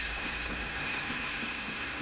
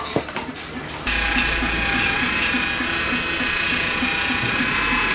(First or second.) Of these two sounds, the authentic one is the second